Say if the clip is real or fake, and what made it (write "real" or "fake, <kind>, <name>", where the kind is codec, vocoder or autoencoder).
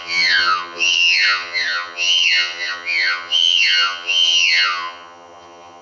fake, vocoder, HiFi-GAN